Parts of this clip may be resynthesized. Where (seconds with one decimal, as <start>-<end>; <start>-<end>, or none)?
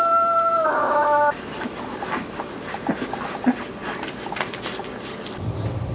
0.0-5.9